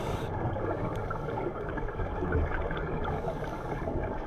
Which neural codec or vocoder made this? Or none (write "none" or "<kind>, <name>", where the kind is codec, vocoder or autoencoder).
codec, DAC